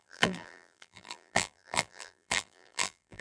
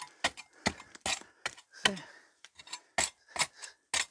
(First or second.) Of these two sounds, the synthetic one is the first